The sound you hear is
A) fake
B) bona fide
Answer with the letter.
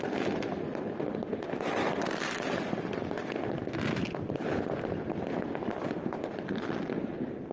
B